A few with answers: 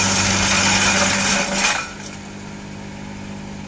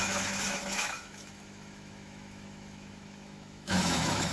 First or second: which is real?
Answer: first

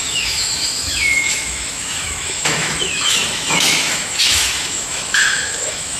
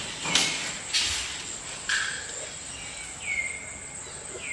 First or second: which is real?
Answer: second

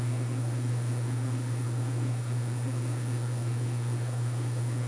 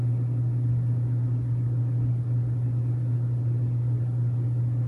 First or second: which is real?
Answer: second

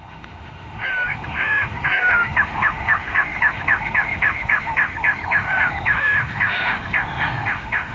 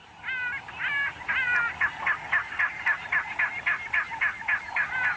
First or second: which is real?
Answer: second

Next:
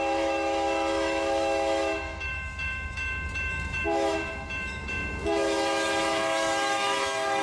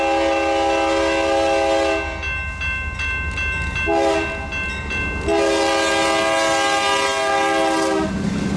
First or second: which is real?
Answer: second